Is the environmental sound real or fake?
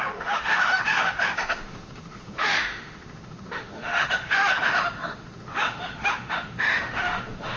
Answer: fake